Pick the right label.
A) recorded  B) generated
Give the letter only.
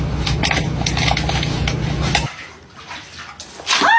A